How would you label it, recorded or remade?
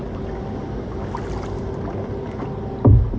recorded